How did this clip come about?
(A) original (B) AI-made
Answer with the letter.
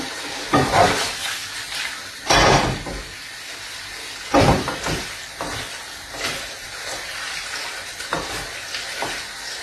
A